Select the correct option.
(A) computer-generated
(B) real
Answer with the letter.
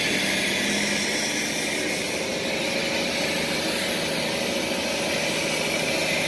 B